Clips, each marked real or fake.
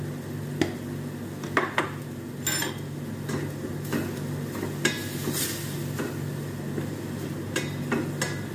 real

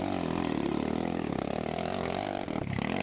real